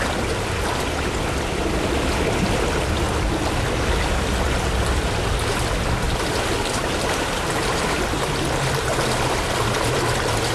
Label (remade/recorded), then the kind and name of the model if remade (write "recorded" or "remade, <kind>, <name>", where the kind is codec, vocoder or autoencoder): recorded